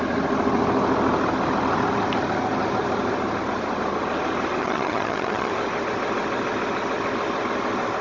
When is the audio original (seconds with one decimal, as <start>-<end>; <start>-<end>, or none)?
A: 0.0-4.6; 5.5-8.0